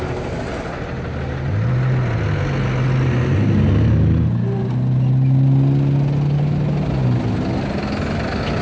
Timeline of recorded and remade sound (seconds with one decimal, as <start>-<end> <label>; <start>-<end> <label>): 0.0-8.6 recorded